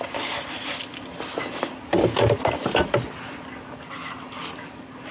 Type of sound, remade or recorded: recorded